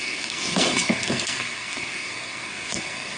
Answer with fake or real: fake